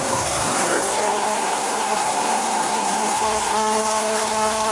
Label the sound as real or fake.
fake